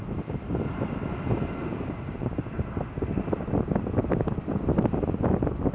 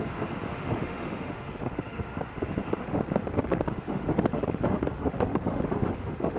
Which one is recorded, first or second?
first